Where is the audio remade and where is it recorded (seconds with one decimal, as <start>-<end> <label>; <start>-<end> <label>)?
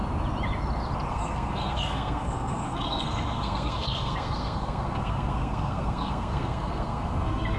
0.0-1.1 recorded; 1.1-7.6 remade